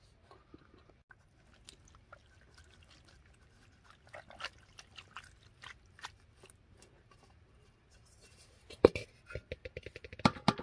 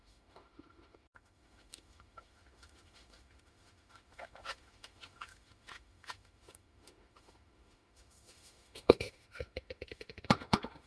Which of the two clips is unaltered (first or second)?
first